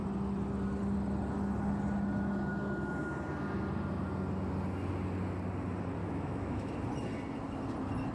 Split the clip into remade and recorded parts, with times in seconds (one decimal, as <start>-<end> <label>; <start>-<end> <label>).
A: 0.0-6.0 recorded; 6.0-6.7 remade; 6.7-8.1 recorded